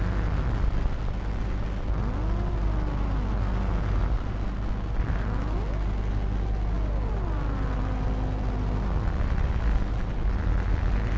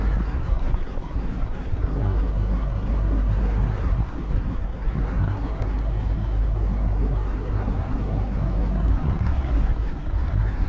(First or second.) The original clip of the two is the first